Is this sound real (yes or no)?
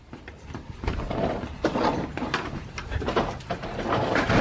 no